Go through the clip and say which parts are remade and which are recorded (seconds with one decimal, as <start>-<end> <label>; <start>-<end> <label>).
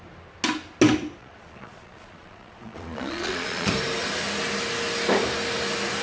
0.0-1.2 recorded; 1.2-3.7 remade; 3.7-6.0 recorded